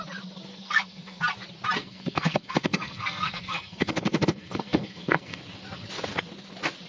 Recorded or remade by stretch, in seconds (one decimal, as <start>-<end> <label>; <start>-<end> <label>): 0.0-0.5 recorded; 0.5-1.2 remade; 1.2-1.8 recorded; 1.8-5.4 remade; 5.4-6.9 recorded

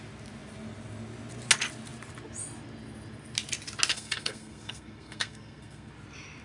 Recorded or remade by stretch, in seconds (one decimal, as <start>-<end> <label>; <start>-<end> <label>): 0.0-3.9 recorded; 3.9-5.9 remade; 5.9-6.4 recorded

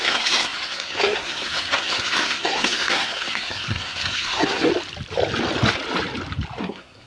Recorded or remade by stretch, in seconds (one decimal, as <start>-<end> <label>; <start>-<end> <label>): 0.0-4.7 remade; 4.7-6.6 recorded; 6.6-7.1 remade